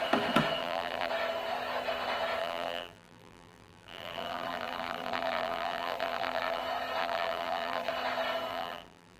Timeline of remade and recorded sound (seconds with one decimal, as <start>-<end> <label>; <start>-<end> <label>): 0.0-0.6 recorded; 0.6-1.1 remade; 1.1-2.4 recorded; 2.4-6.6 remade; 6.6-7.0 recorded; 7.0-7.9 remade; 7.9-8.5 recorded; 8.5-9.2 remade